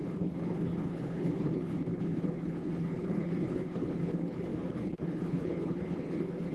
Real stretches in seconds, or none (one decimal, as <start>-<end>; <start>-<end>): none